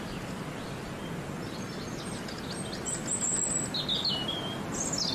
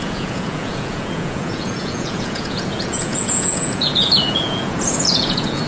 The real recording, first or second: first